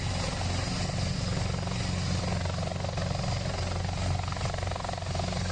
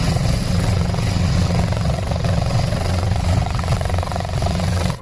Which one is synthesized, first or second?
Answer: second